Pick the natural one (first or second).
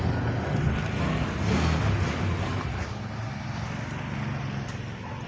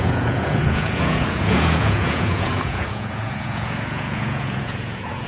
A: first